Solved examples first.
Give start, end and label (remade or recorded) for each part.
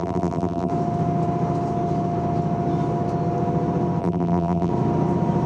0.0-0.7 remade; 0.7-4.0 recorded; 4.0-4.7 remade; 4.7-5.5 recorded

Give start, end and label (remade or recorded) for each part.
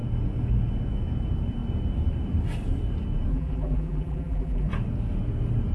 0.0-3.3 recorded; 3.3-4.7 remade; 4.7-5.7 recorded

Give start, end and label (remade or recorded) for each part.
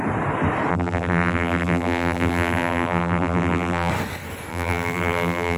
0.0-0.7 recorded; 0.7-3.9 remade; 3.9-4.5 recorded; 4.5-5.6 remade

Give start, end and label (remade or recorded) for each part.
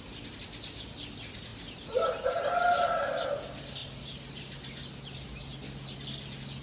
0.0-1.5 recorded; 1.5-3.3 remade; 3.3-6.6 recorded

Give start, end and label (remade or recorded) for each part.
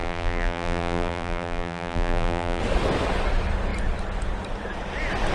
0.0-2.6 remade; 2.6-5.3 recorded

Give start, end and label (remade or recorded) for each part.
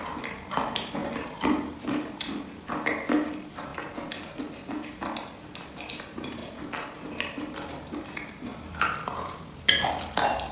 0.0-3.7 remade; 3.7-4.9 recorded; 4.9-10.5 remade